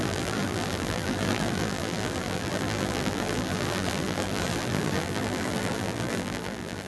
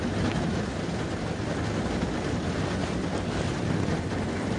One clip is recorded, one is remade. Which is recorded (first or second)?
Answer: second